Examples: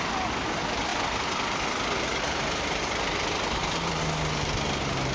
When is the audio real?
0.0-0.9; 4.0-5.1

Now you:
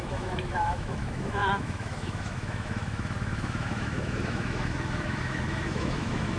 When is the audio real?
none

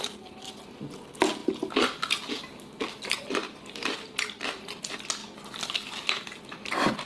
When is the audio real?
0.0-7.1

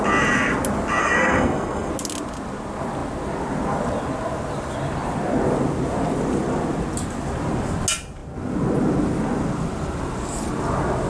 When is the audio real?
0.0-1.0; 1.9-11.1